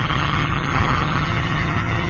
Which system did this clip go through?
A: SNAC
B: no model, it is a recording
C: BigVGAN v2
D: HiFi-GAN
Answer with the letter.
D